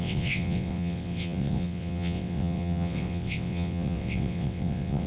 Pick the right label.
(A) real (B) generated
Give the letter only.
B